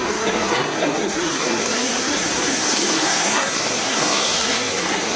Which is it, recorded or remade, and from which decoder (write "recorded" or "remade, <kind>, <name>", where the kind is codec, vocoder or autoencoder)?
remade, codec, SNAC